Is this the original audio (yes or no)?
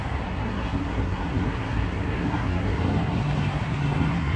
no